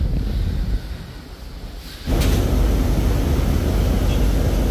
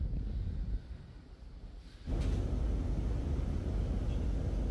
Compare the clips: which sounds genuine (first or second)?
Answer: first